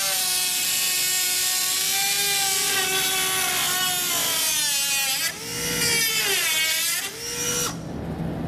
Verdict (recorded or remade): recorded